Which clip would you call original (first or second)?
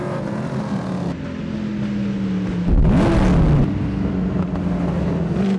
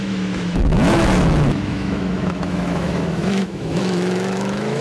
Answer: first